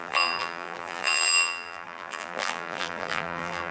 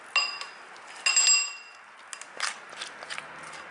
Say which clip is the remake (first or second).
first